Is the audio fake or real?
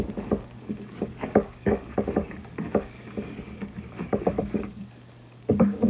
fake